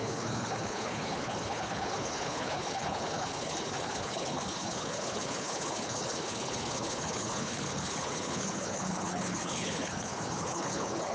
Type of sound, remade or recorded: remade